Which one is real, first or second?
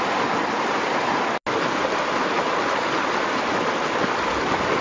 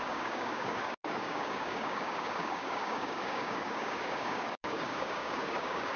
first